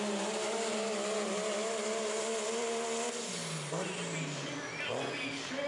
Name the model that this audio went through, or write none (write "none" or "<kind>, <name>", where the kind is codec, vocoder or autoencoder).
none